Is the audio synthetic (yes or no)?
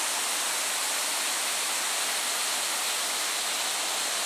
no